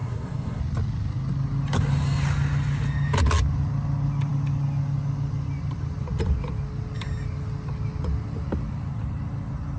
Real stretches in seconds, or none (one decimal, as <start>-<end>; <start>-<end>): 0.6-9.8